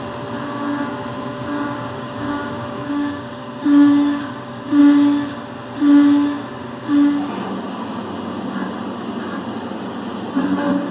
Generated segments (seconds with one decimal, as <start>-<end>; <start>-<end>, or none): 1.3-4.8

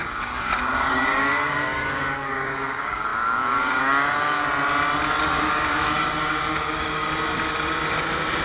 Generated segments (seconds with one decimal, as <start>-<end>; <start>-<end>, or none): 0.0-4.4; 5.2-7.1

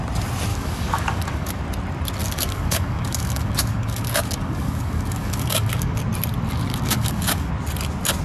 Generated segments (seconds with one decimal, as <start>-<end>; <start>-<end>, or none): 0.5-1.6; 2.2-6.0; 6.7-7.5